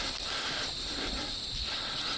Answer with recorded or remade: recorded